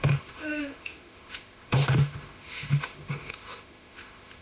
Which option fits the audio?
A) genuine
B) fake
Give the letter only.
B